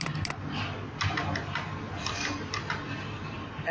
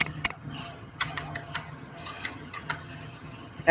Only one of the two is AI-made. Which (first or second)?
second